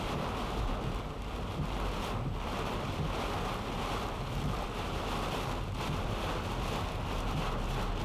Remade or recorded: recorded